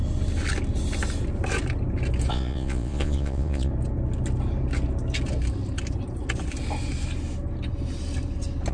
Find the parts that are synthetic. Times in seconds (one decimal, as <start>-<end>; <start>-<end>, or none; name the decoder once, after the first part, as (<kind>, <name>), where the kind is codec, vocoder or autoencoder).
2.3-3.7 (vocoder, Vocos)